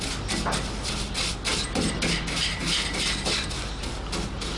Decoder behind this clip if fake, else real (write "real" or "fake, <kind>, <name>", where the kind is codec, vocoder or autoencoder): real